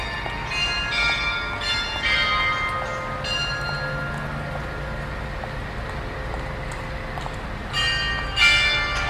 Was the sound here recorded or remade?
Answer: recorded